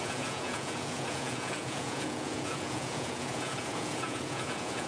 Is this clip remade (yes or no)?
yes